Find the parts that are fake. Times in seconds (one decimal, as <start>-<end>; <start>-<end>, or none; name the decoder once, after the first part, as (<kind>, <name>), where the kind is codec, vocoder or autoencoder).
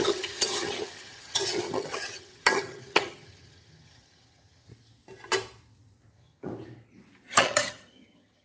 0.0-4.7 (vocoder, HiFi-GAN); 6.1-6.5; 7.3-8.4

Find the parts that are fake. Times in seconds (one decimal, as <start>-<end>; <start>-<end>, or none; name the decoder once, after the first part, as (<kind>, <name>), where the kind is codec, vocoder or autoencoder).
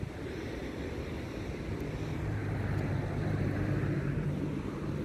none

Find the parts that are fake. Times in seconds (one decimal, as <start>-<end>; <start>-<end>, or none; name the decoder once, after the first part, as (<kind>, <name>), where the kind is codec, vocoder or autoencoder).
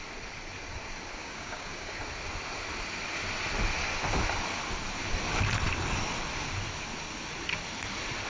1.2-2.0 (codec, DAC)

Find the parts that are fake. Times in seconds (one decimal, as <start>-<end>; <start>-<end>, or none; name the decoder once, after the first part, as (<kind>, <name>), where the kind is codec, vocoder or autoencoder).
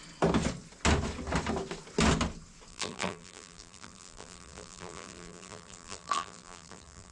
2.7-7.1 (vocoder, BigVGAN v2)